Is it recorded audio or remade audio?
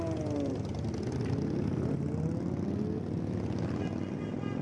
recorded